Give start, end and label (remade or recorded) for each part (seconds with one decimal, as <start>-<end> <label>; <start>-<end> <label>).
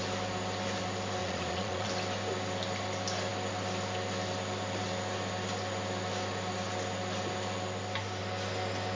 0.0-1.2 recorded; 1.2-1.9 remade; 1.9-8.9 recorded